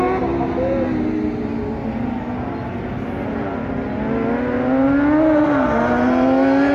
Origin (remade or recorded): recorded